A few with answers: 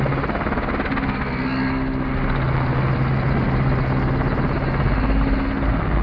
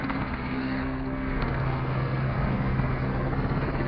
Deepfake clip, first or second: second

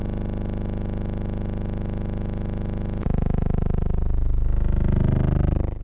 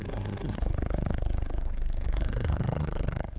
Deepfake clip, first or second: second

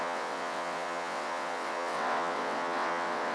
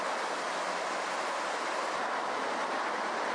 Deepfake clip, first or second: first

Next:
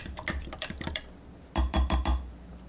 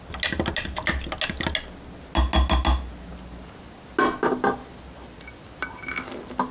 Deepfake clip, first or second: first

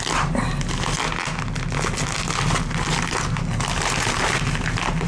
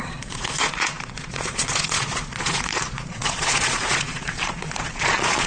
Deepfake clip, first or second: second